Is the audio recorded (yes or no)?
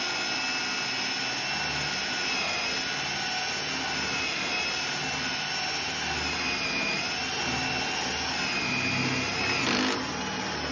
yes